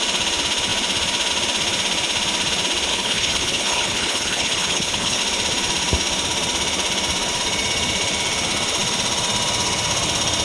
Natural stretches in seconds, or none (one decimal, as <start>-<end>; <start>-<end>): 0.0-2.9; 5.2-10.4